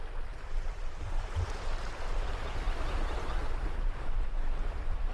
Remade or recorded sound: recorded